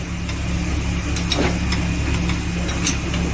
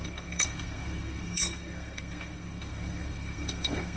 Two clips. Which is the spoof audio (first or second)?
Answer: second